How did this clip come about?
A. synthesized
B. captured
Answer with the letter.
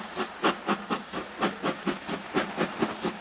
B